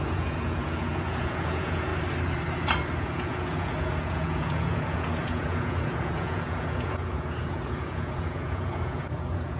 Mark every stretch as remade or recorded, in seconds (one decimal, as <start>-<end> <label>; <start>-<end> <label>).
0.0-1.9 remade; 1.9-3.0 recorded; 3.0-9.6 remade